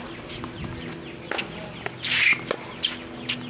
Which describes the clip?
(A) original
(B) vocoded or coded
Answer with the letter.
A